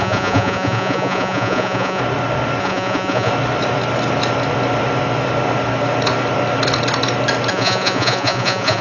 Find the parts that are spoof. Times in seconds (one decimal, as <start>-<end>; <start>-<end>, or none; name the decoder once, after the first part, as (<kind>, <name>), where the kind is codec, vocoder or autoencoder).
0.0-2.0 (vocoder, Vocos); 2.6-3.3; 7.5-8.8